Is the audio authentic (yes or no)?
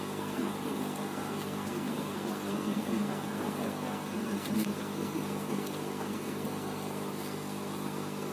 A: no